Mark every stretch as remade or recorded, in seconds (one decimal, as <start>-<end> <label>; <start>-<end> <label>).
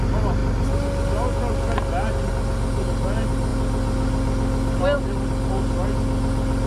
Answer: 0.0-6.7 recorded